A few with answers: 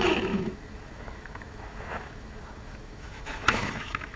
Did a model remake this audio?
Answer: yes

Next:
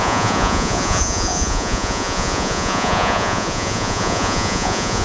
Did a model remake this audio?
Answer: yes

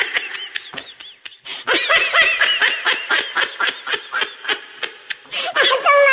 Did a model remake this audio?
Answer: no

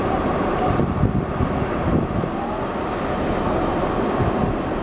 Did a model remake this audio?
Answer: no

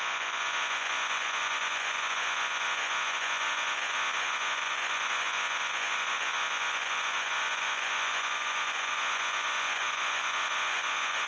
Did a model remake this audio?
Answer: yes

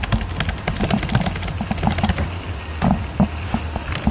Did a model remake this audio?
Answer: no